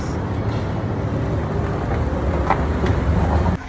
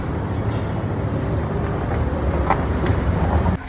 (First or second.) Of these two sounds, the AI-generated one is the second